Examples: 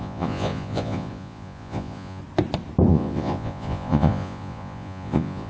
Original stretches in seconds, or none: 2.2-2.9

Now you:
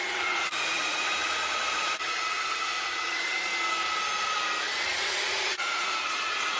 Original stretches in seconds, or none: 3.5-4.8